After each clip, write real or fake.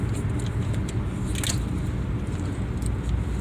real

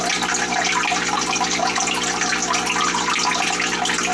real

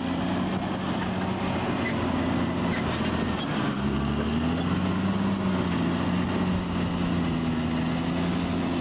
real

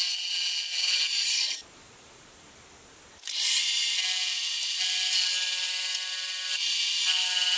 real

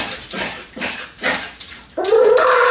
fake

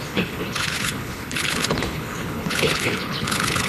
fake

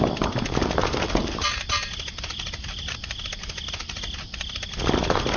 real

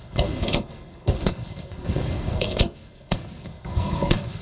fake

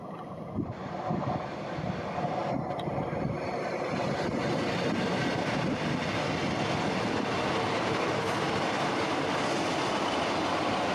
real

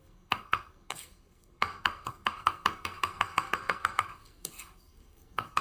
fake